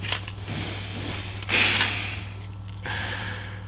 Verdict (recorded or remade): recorded